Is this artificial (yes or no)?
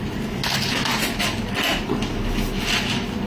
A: no